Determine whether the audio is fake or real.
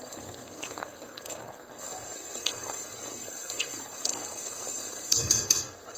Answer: fake